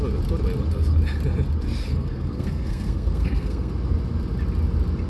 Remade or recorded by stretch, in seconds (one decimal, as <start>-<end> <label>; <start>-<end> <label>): 0.0-1.8 recorded; 1.8-3.7 remade; 3.7-5.1 recorded